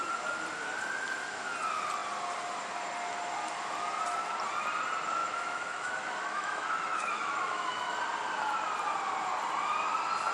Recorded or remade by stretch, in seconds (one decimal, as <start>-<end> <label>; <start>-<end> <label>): 0.0-5.2 recorded; 5.2-8.0 remade; 8.0-10.3 recorded